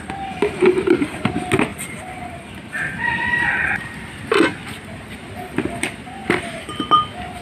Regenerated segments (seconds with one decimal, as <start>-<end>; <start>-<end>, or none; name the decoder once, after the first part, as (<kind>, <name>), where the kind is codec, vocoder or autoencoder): none